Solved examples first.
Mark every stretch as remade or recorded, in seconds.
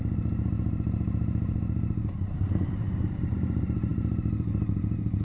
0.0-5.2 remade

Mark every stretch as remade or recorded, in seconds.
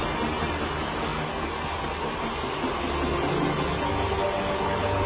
0.0-5.1 recorded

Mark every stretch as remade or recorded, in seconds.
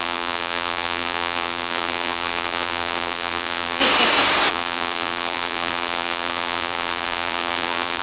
0.0-3.8 remade; 3.8-4.5 recorded; 4.5-8.0 remade